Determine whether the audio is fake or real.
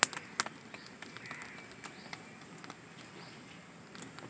real